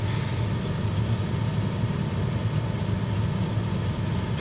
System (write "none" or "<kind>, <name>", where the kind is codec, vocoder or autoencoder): none